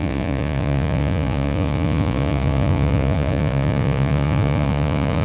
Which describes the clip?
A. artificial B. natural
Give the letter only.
A